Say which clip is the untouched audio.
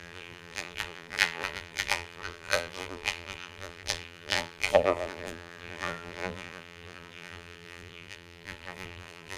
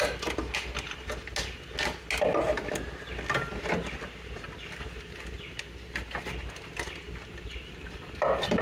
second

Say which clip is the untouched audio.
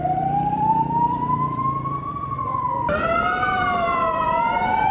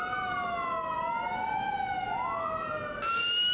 second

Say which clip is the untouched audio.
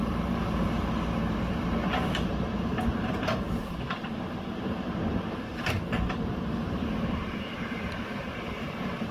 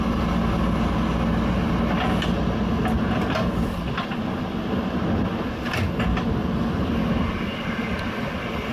second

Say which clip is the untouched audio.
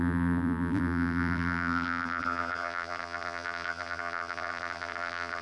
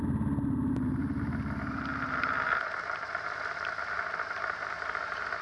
second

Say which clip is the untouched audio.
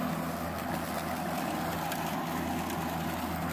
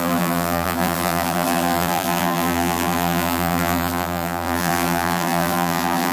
first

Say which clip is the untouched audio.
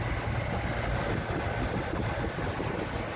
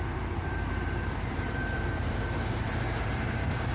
first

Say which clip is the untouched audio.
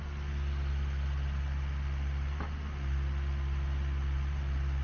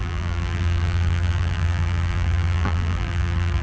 first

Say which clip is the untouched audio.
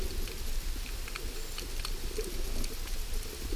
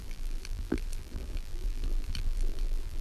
first